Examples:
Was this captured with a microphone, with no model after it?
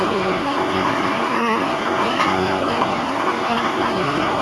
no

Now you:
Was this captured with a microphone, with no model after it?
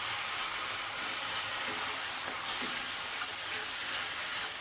yes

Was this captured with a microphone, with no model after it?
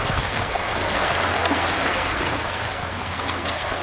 no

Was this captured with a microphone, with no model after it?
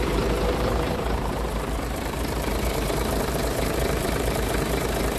no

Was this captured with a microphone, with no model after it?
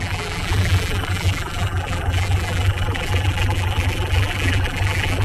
no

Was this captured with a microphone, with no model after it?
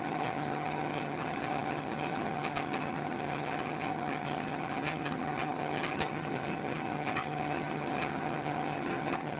no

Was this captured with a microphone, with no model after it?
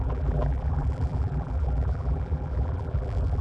no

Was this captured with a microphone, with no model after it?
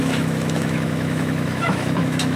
no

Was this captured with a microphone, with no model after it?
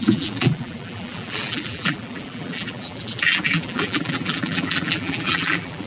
no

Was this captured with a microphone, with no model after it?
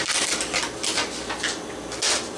yes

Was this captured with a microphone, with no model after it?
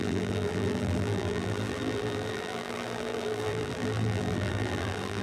no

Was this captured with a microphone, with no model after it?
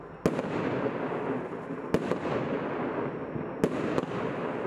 yes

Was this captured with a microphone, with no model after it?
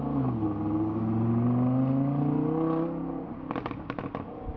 yes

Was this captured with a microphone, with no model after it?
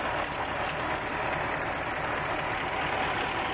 yes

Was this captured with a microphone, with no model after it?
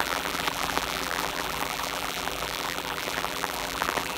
no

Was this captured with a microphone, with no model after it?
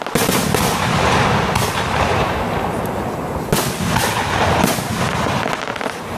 yes